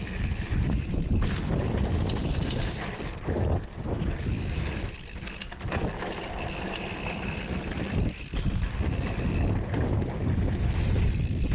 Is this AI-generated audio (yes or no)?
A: no